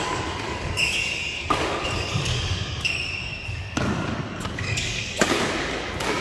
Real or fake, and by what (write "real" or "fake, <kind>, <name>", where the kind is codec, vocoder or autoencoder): fake, codec, DAC